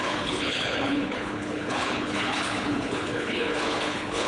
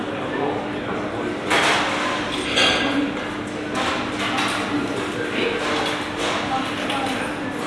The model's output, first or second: first